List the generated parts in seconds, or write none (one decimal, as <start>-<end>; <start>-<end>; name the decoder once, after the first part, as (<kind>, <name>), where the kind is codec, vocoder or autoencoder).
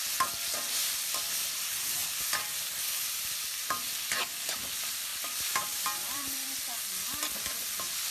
2.0-3.9 (vocoder, BigVGAN v2); 5.1-7.3